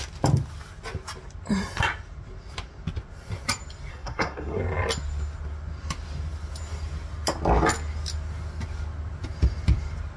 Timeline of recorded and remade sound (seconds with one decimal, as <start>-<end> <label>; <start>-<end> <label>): 0.0-3.9 recorded; 3.9-4.6 remade; 4.6-10.2 recorded

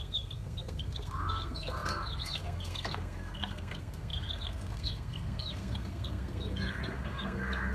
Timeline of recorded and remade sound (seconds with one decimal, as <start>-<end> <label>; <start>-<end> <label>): 0.0-7.7 remade

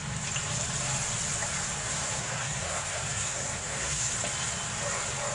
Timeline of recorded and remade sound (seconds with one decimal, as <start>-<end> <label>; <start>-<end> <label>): 0.0-1.8 recorded; 1.8-4.1 remade; 4.1-5.3 recorded

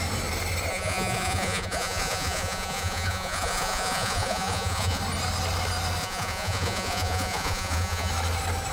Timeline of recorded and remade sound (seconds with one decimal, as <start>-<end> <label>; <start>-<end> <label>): 0.0-0.7 recorded; 0.7-5.0 remade; 5.0-6.0 recorded; 6.0-8.1 remade; 8.1-8.7 recorded

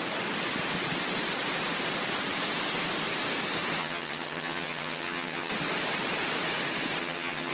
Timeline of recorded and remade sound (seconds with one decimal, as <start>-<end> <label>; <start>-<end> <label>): 0.0-3.8 recorded; 3.8-5.5 remade; 5.5-7.0 recorded; 7.0-7.5 remade

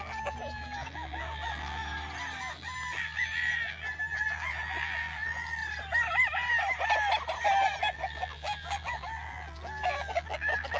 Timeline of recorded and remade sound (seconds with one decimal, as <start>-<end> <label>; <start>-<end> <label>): 0.0-1.8 remade; 1.8-2.4 recorded; 2.4-5.6 remade; 5.6-7.8 recorded; 7.8-10.8 remade

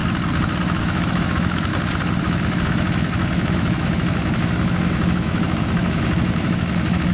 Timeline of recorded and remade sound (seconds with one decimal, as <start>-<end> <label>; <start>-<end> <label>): 0.0-0.6 recorded; 0.6-1.7 remade; 1.7-2.2 recorded; 2.2-7.1 remade